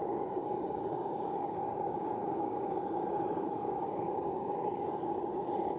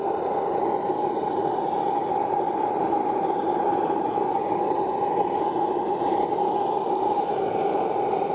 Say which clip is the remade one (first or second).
first